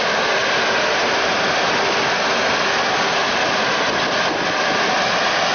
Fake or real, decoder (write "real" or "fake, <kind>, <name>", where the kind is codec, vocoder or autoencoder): real